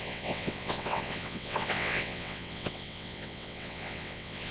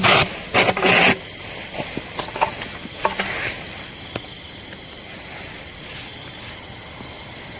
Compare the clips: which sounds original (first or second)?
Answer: second